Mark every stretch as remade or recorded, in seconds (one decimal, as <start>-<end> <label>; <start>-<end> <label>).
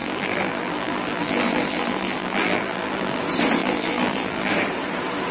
0.0-3.2 remade; 3.2-3.6 recorded; 3.6-4.5 remade; 4.5-5.3 recorded